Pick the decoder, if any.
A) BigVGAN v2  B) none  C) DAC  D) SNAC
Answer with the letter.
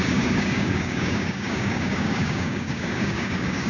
C